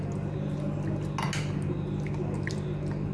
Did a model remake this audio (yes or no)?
no